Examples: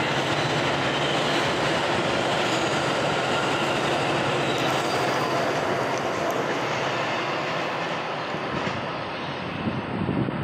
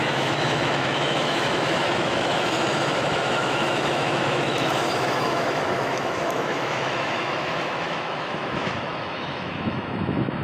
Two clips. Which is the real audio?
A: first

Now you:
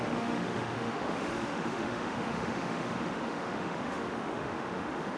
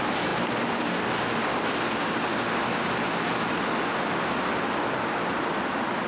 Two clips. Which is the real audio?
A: second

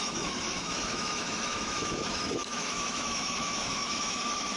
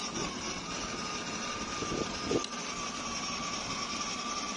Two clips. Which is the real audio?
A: second